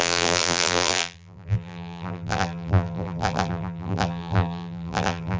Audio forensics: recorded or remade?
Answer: remade